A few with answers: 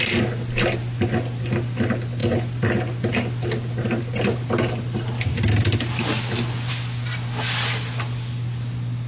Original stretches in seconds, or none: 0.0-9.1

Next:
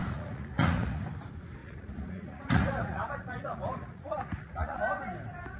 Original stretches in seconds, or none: 1.0-1.6; 4.8-5.6

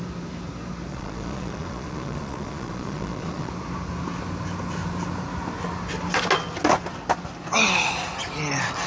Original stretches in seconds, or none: 0.0-0.9; 3.5-8.9